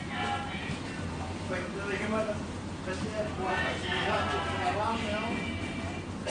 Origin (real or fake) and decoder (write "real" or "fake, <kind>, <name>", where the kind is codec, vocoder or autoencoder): real